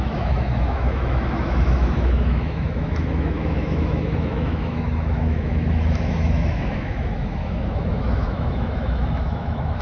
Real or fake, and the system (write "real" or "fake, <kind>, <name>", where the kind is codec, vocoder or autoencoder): fake, autoencoder, DAC-VAE